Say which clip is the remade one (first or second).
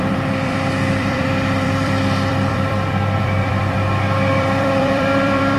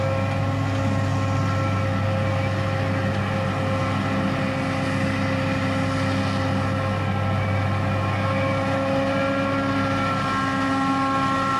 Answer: first